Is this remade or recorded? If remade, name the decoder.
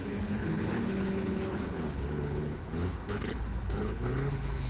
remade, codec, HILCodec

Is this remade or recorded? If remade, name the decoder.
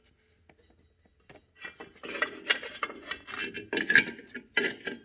recorded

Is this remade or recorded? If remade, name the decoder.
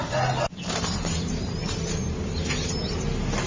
recorded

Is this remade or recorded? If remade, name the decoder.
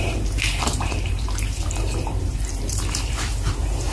remade, vocoder, BigVGAN v2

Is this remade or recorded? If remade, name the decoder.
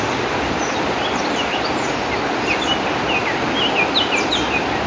recorded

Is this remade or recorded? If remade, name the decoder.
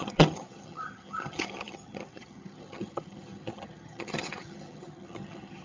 remade, vocoder, HiFi-GAN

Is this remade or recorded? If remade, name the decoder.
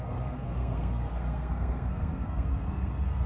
remade, codec, SNAC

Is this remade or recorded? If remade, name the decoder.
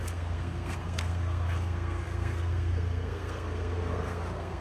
remade, codec, SNAC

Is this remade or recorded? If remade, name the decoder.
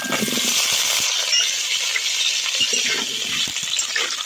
recorded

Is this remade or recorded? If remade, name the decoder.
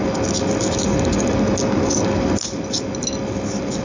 recorded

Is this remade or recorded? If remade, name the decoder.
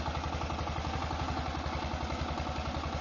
recorded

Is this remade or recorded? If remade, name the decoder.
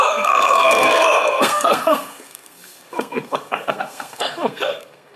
remade, codec, SNAC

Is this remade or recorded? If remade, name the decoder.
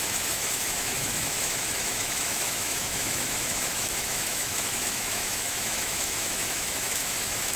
remade, autoencoder, DAC-VAE